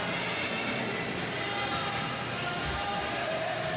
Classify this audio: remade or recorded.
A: recorded